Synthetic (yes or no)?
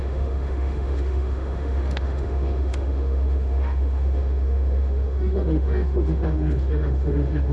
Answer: yes